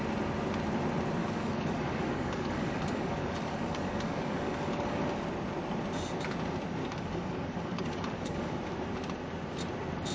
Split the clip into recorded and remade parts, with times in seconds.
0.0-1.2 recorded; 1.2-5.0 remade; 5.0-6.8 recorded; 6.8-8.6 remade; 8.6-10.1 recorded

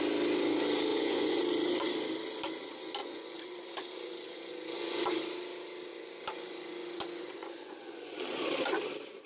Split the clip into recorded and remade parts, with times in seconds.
0.0-0.9 recorded; 0.9-1.4 remade; 1.4-3.0 recorded; 3.0-5.0 remade; 5.0-5.9 recorded; 5.9-8.4 remade; 8.4-9.3 recorded

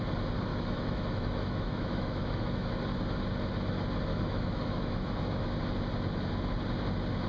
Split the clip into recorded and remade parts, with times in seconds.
0.0-0.5 recorded; 0.5-2.7 remade; 2.7-4.1 recorded; 4.1-5.5 remade; 5.5-7.3 recorded

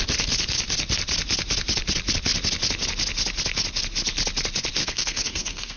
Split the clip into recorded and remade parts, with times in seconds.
0.0-4.8 recorded; 4.8-5.8 remade

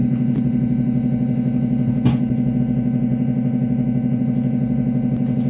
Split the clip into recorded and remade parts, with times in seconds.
0.0-5.5 recorded

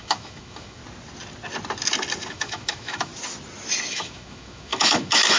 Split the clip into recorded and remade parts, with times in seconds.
0.0-0.8 remade; 0.8-2.3 recorded; 2.3-3.1 remade; 3.1-3.9 recorded; 3.9-5.4 remade

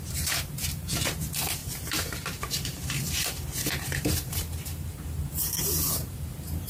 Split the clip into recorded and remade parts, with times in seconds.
0.0-6.7 remade